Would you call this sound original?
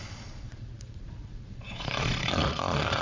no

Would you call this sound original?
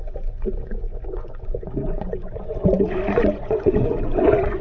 no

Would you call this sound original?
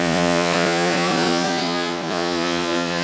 no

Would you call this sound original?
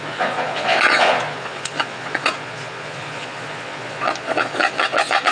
no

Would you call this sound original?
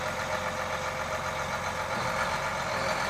yes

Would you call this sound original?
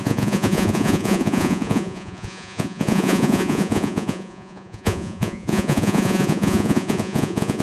no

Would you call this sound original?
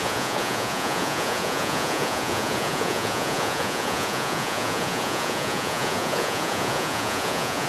no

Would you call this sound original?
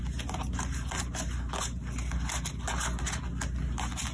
yes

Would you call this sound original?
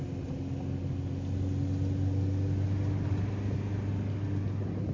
yes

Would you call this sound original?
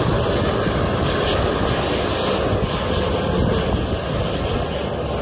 yes